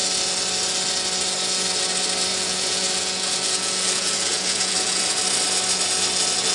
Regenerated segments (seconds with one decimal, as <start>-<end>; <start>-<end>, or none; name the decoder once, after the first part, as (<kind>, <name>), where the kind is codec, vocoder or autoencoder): 2.3-5.2 (vocoder, Vocos)